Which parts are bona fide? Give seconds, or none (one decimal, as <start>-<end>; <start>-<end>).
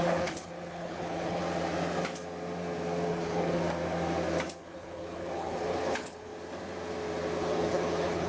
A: 1.4-3.1; 3.6-4.6; 6.3-7.4